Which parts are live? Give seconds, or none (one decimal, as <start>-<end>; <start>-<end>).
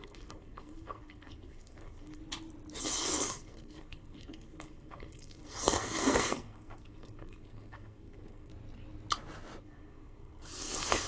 2.2-2.8; 8.5-9.6